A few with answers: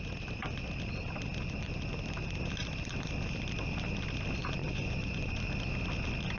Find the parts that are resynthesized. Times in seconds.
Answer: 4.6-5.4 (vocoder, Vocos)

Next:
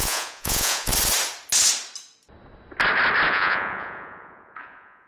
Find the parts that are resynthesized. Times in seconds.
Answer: 0.0-0.9 (vocoder, Vocos); 3.3-5.1